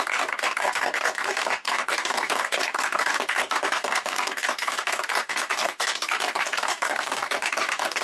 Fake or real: fake